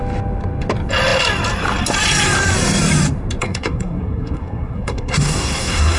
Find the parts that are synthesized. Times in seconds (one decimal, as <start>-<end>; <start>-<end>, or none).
3.4-6.0